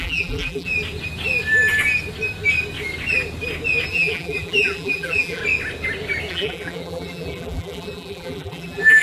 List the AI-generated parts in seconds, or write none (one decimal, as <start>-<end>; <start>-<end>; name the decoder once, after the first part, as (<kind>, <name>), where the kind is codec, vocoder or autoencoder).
0.0-0.7 (vocoder, BigVGAN v2); 3.9-5.4; 6.3-9.0

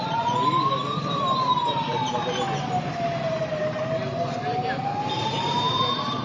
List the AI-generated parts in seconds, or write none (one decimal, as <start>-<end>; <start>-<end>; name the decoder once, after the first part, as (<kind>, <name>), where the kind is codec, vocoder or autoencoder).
0.0-2.0 (vocoder, BigVGAN v2); 5.7-6.2

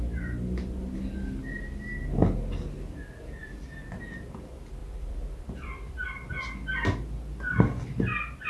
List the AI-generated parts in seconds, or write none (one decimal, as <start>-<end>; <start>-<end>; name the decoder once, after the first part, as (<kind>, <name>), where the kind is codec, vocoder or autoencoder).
3.4-4.0 (vocoder, BigVGAN v2); 4.8-6.3

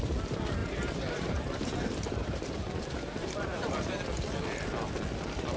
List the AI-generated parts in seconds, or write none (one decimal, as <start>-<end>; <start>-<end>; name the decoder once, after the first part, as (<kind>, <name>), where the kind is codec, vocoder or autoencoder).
0.6-4.0 (vocoder, BigVGAN v2)

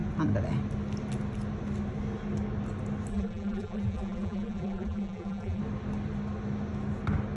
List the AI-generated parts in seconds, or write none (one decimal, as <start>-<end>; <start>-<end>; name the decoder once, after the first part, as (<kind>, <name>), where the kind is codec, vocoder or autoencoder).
3.1-5.6 (vocoder, BigVGAN v2)

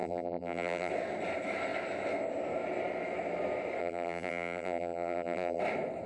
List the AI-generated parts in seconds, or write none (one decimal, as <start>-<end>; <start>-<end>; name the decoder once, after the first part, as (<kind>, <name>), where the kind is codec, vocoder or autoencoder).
0.0-0.9 (vocoder, BigVGAN v2); 3.8-5.6